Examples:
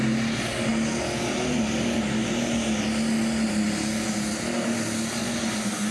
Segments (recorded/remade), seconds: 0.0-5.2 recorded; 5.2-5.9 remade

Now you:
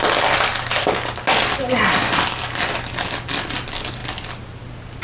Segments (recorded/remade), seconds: 0.0-5.0 recorded